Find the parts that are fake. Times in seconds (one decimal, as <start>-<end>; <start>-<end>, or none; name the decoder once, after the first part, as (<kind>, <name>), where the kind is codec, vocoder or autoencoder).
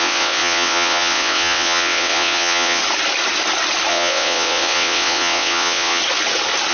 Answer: 0.0-2.8 (vocoder, WaveNeXt); 3.9-6.0